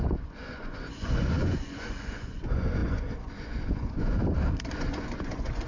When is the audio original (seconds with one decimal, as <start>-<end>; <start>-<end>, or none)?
4.2-4.7